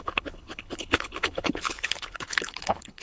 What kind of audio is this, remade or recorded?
remade